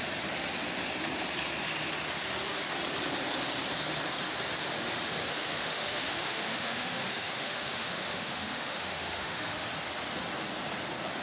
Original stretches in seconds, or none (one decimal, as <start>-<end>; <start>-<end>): 0.0-5.3; 9.7-11.2